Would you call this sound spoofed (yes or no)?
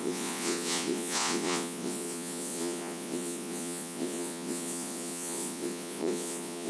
yes